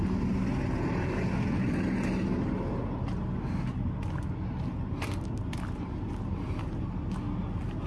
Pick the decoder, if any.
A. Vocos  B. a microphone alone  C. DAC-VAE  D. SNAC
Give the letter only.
B